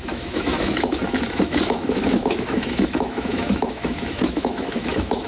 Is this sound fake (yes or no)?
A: yes